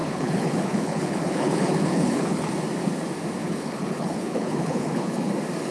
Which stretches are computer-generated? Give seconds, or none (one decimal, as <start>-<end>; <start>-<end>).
0.0-2.5; 3.4-5.3